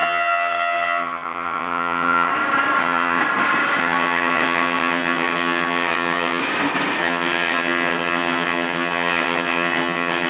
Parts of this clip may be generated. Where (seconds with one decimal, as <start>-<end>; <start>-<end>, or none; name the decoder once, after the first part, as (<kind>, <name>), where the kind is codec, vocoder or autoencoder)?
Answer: 0.0-2.3 (vocoder, HiFi-GAN); 2.8-3.2; 3.8-6.4; 7.0-10.3